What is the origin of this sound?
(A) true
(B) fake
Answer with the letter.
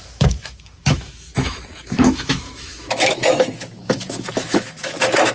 B